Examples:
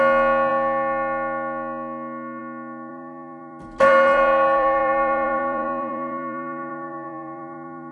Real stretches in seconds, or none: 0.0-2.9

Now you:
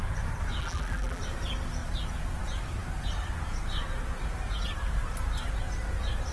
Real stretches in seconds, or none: 0.0-0.6; 1.2-6.3

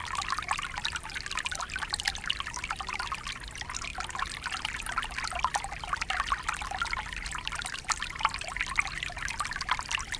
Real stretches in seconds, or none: 0.0-10.2